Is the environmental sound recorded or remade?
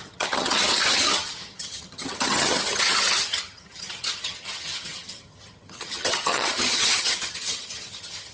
remade